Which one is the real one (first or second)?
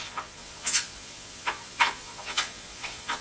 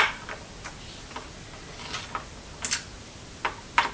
second